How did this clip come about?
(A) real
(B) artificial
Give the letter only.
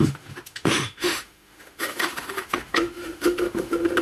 B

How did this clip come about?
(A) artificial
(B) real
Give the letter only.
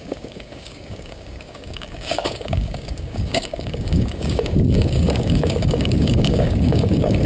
A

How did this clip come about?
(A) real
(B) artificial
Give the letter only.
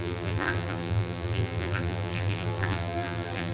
B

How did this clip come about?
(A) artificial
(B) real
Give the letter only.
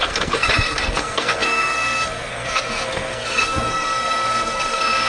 A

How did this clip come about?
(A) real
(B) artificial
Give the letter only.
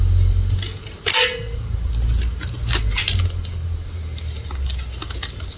A